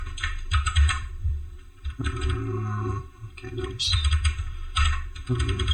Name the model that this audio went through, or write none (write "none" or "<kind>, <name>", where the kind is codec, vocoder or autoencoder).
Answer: vocoder, BigVGAN v2